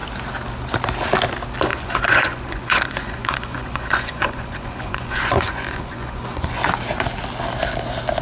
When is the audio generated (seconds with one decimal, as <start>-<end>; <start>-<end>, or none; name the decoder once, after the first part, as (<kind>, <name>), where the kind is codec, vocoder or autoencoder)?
1.7-6.6 (vocoder, Vocos)